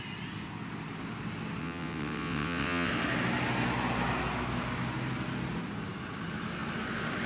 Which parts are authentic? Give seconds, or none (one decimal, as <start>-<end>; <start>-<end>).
0.0-1.6; 2.9-7.3